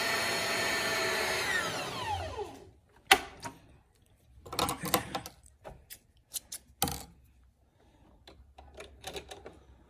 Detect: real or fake real